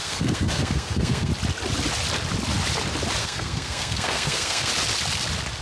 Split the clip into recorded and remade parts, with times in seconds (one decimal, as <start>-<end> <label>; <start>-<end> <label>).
0.0-1.3 remade; 1.3-3.2 recorded; 3.2-4.7 remade; 4.7-5.6 recorded